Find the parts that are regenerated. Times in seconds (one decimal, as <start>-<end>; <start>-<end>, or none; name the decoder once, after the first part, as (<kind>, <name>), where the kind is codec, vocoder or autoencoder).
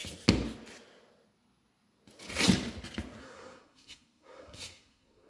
3.2-5.3 (codec, SNAC)